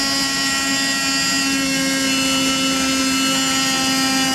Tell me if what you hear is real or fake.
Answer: real